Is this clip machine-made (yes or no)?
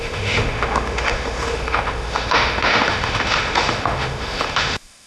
yes